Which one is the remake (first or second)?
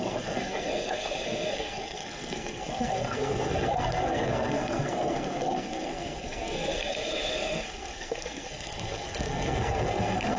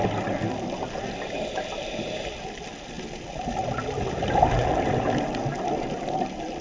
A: first